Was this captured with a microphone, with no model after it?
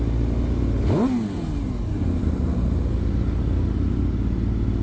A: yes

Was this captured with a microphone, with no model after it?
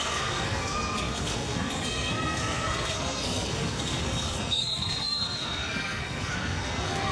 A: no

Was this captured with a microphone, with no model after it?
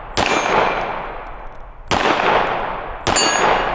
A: yes